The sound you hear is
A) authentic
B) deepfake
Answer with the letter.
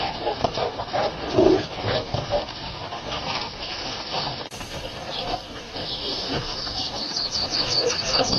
B